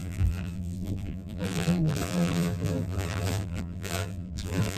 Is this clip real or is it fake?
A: fake